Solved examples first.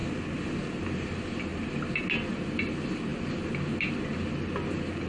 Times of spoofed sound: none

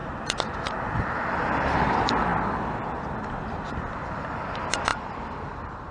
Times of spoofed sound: 4.9-5.9 (vocoder, BigVGAN v2)

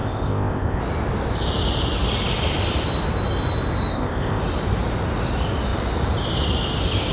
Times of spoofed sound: 0.0-0.8 (codec, ZipCodec); 3.9-4.4

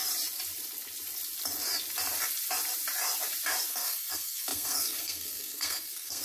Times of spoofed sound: 3.7-6.2 (codec, SNAC)

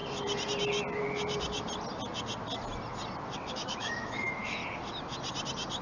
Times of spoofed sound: 3.5-4.6 (autoencoder, DAC-VAE)

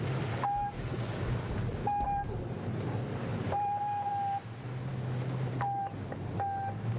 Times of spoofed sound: 3.3-4.1 (vocoder, BigVGAN v2)

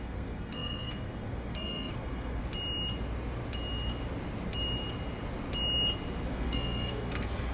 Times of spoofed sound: 0.0-2.4 (codec, SNAC); 6.3-7.5